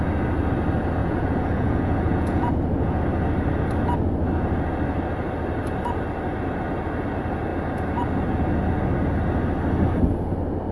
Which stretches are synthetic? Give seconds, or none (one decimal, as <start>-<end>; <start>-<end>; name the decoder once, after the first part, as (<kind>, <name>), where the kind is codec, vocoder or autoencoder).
1.0-3.0 (vocoder, Vocos)